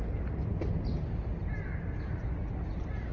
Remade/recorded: recorded